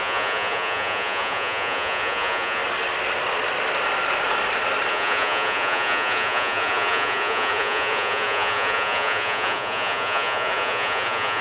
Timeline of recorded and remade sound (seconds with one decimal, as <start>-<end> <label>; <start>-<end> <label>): 0.0-2.6 remade; 2.6-4.9 recorded; 4.9-11.4 remade